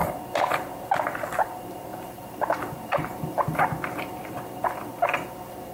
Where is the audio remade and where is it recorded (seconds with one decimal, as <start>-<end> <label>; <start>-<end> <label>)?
0.0-1.9 recorded; 1.9-3.6 remade; 3.6-5.7 recorded